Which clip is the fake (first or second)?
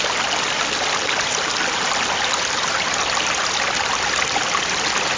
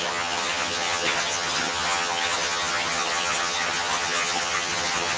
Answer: second